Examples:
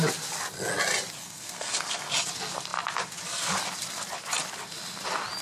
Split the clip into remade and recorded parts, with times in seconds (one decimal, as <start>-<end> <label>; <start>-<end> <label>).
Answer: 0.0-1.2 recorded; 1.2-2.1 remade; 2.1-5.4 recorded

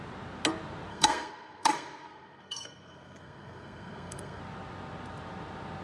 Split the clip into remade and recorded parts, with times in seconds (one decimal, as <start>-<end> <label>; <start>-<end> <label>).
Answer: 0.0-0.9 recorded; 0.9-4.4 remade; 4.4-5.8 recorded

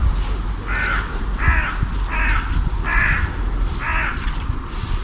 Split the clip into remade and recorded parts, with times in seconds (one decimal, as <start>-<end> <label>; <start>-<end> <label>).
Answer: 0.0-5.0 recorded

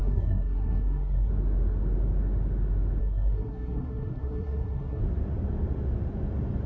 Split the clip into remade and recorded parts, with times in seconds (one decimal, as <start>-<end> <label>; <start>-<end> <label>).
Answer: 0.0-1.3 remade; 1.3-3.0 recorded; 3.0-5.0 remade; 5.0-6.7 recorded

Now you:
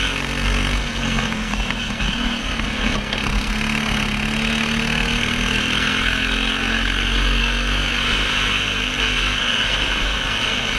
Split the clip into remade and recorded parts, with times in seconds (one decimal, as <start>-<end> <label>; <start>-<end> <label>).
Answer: 0.0-10.8 remade